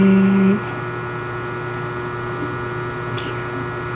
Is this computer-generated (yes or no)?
no